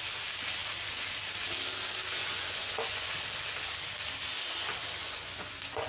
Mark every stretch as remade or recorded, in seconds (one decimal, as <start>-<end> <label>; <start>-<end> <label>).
0.0-2.2 recorded; 2.2-3.1 remade; 3.1-5.0 recorded; 5.0-5.9 remade